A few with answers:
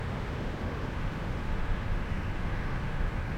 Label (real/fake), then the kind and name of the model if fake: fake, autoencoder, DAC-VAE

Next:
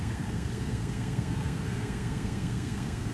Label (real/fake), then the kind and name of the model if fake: fake, codec, SNAC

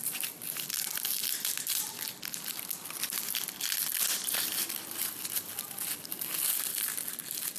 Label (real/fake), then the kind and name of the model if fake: real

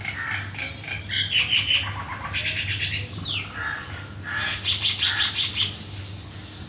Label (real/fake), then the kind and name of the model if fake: real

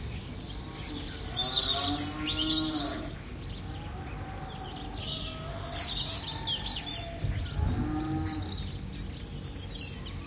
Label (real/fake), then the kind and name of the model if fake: real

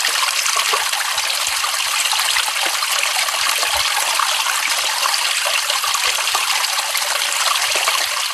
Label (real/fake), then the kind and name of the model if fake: real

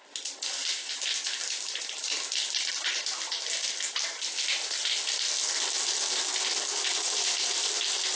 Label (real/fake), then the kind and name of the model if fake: real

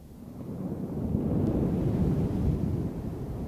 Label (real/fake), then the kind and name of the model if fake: real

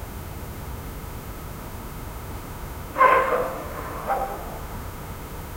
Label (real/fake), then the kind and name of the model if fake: fake, autoencoder, DAC-VAE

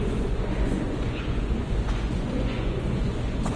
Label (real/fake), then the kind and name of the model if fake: fake, vocoder, Vocos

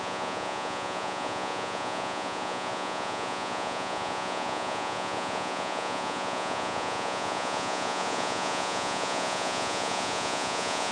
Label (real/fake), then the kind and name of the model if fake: fake, vocoder, Vocos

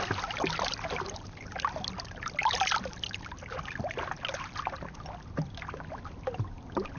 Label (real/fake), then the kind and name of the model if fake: real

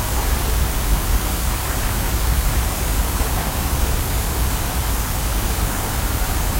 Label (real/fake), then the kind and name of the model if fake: fake, codec, DAC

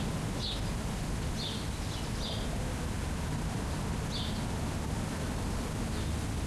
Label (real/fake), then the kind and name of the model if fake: real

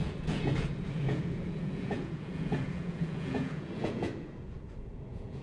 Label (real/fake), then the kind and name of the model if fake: fake, vocoder, Vocos